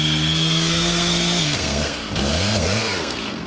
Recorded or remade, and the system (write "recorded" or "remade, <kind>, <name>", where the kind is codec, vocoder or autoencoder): remade, codec, SNAC